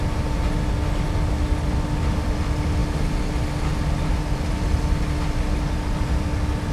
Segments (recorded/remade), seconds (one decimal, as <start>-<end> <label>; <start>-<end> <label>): 0.0-6.7 recorded